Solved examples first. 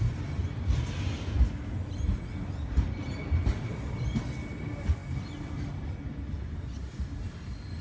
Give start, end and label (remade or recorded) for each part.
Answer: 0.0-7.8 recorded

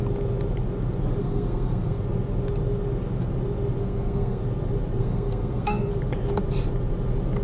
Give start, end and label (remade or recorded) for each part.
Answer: 0.0-1.2 recorded; 1.2-2.0 remade; 2.0-3.8 recorded; 3.8-4.4 remade; 4.4-5.0 recorded; 5.0-5.9 remade; 5.9-7.4 recorded

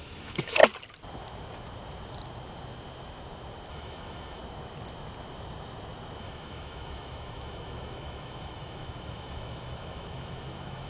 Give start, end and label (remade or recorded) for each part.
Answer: 0.0-0.6 remade; 0.6-3.7 recorded; 3.7-4.4 remade; 4.4-6.2 recorded; 6.2-10.9 remade

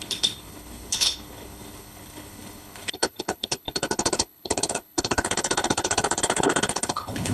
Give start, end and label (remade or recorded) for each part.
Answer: 0.0-7.3 remade

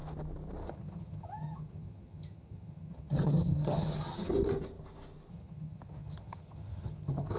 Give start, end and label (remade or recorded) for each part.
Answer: 0.0-0.7 recorded; 0.7-4.3 remade; 4.3-5.3 recorded; 5.3-7.4 remade

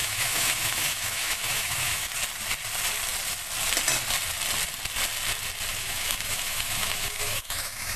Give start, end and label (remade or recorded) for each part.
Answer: 0.0-2.1 remade; 2.1-5.7 recorded; 5.7-8.0 remade

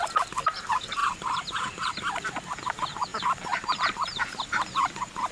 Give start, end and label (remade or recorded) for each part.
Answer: 0.0-1.0 recorded; 1.0-1.9 remade; 1.9-3.1 recorded; 3.1-4.2 remade; 4.2-5.3 recorded